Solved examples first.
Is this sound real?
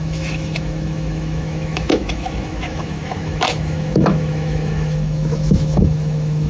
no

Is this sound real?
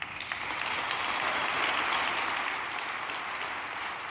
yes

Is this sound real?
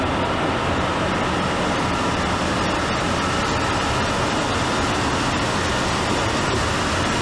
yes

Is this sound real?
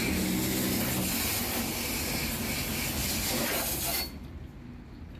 yes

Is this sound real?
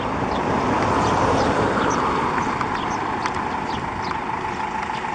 yes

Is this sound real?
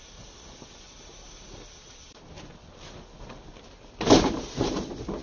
yes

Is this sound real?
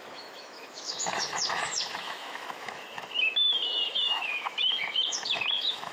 no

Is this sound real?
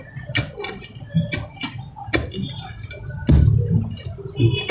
yes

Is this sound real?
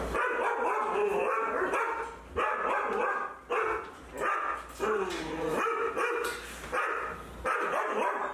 yes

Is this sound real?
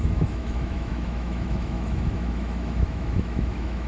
no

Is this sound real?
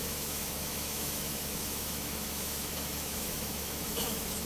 no